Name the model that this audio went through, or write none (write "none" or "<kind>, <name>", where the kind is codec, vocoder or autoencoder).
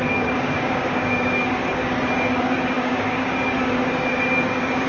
codec, DAC